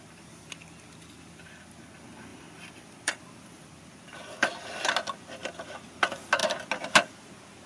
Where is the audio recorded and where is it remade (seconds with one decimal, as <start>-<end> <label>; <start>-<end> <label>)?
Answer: 0.0-2.3 recorded; 2.3-3.1 remade; 3.1-7.7 recorded